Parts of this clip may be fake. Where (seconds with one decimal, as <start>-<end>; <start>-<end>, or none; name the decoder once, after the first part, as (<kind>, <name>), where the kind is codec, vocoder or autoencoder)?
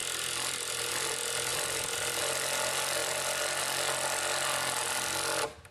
0.0-0.9 (vocoder, BigVGAN v2); 1.5-2.2; 3.0-3.6